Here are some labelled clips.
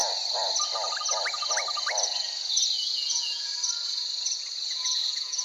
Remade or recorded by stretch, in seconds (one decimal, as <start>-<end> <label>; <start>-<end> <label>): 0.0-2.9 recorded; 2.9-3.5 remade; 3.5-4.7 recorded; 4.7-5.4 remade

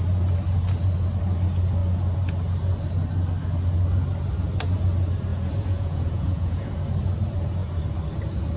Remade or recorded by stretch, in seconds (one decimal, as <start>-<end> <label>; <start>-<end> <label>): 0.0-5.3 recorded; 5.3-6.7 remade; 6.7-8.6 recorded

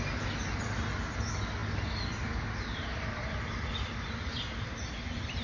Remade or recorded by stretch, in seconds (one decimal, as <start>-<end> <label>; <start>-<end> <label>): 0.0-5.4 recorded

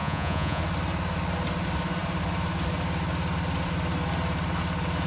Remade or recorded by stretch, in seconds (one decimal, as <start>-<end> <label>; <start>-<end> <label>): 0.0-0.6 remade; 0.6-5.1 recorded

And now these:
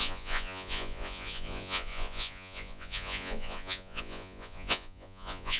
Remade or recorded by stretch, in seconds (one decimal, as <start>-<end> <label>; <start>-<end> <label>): 0.0-5.6 remade